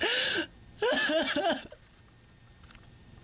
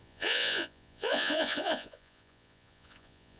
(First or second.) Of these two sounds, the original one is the first